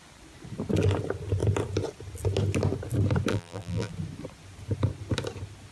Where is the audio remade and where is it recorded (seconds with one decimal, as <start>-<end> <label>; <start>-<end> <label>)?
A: 0.0-3.3 recorded; 3.3-3.9 remade; 3.9-5.7 recorded